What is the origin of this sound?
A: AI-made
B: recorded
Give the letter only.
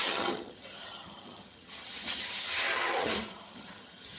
A